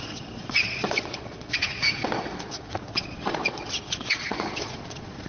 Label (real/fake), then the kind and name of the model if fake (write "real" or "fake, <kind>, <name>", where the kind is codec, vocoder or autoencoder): fake, vocoder, Vocos